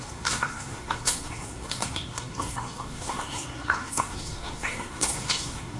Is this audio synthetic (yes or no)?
yes